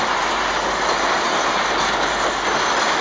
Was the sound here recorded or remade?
recorded